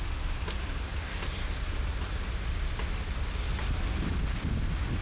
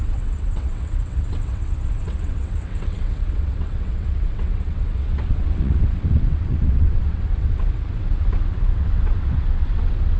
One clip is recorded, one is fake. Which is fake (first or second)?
second